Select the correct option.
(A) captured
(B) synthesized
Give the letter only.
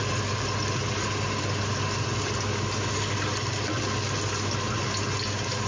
A